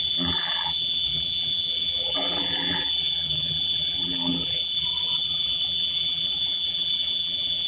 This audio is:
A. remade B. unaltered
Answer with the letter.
A